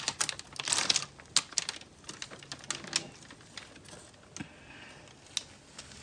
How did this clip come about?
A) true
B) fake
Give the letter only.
A